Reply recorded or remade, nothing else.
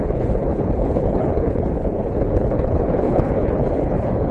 remade